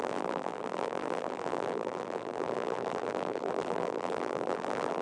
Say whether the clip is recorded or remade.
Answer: remade